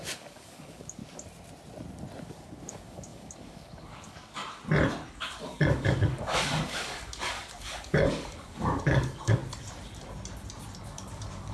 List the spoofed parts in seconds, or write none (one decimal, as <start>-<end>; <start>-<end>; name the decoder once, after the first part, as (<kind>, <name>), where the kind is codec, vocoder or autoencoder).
0.0-1.0 (codec, DAC); 2.2-4.4; 5.1-9.4; 10.8-11.5